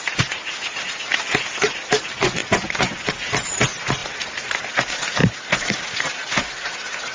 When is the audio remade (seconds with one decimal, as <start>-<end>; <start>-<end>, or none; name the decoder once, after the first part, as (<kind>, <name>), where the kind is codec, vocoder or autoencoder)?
none